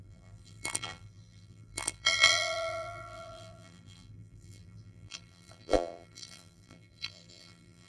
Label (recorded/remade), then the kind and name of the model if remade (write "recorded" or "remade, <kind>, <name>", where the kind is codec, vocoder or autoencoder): remade, vocoder, BigVGAN v2